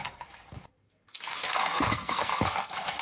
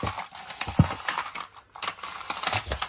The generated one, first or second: first